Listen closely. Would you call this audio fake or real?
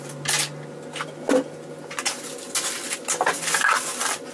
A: real